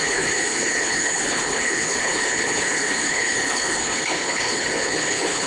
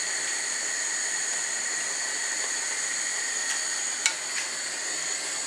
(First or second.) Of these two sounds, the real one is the second